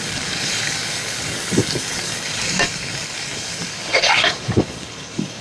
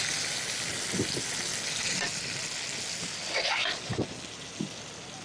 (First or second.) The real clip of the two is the second